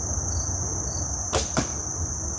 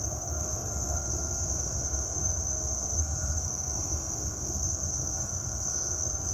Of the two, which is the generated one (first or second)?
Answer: second